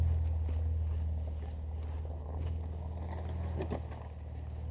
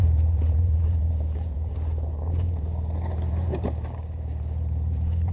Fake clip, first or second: second